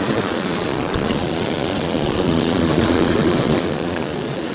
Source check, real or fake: fake